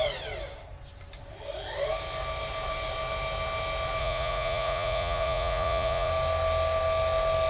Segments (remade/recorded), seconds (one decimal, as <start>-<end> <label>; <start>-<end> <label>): 0.0-4.0 recorded; 4.0-6.1 remade; 6.1-7.5 recorded